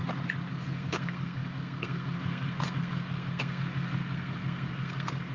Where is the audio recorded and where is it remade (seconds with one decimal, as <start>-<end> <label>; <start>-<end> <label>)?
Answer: 0.0-0.5 recorded; 0.5-5.3 remade